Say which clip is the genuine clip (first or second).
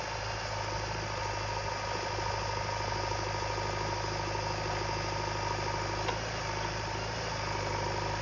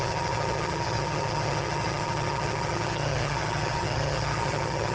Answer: first